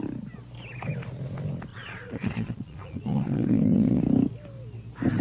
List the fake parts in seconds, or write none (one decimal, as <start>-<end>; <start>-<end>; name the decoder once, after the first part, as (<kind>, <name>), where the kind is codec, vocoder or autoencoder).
1.7-4.0 (vocoder, Vocos)